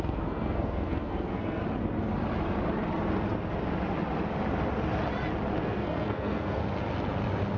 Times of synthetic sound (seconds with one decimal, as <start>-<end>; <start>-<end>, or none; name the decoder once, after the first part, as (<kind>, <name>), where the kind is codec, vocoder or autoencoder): 0.0-1.6 (codec, SNAC); 5.6-6.6